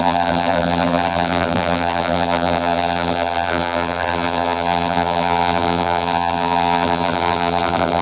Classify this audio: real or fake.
fake